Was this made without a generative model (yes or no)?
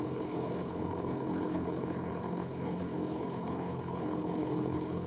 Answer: no